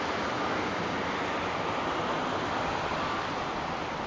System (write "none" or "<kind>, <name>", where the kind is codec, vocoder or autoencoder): none